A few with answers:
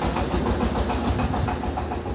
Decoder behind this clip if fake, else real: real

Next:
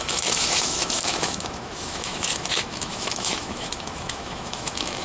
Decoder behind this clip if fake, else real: fake, autoencoder, DAC-VAE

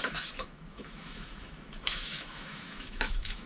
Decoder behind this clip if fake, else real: fake, autoencoder, DAC-VAE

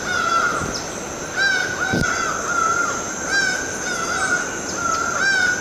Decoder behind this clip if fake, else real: real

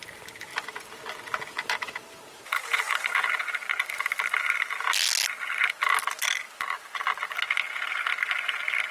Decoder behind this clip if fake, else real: real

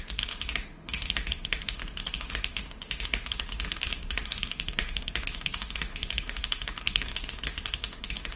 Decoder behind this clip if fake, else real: fake, autoencoder, DAC-VAE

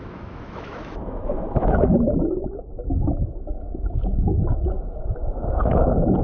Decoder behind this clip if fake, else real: fake, autoencoder, DAC-VAE